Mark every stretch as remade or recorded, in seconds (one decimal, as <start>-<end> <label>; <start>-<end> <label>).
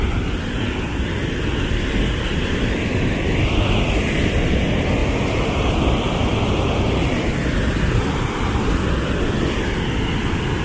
0.0-5.0 recorded; 5.0-5.7 remade; 5.7-6.2 recorded; 6.2-8.5 remade; 8.5-10.6 recorded